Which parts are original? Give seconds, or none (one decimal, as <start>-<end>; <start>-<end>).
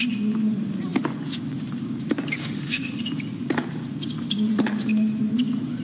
0.0-2.4; 3.0-5.8